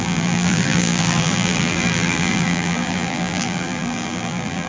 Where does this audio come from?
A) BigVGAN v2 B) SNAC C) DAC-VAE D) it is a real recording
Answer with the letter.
A